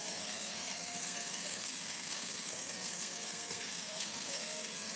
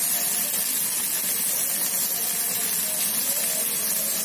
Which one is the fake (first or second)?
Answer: first